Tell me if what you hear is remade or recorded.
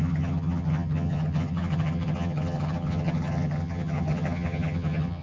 remade